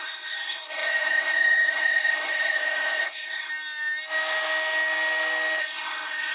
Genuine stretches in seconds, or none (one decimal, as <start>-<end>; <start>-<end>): 3.5-5.6